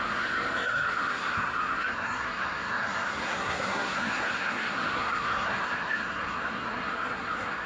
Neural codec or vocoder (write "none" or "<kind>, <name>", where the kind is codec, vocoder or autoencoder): codec, SNAC